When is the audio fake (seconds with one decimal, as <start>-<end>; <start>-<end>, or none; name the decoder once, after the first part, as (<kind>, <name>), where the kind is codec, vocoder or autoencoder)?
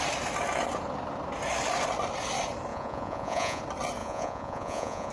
2.7-3.6 (vocoder, Vocos); 4.0-5.1